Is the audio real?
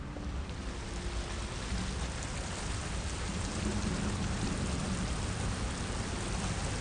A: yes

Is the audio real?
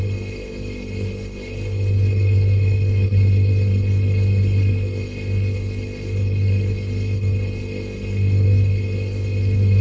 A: no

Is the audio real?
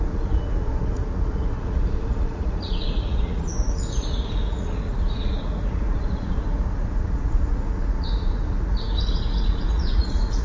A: no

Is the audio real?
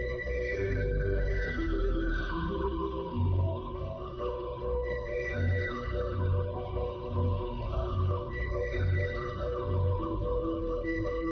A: no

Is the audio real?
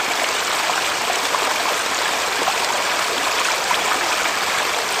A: yes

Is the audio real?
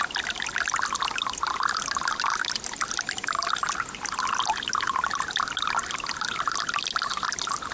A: yes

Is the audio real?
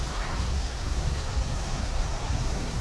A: no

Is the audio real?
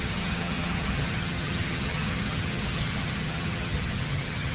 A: no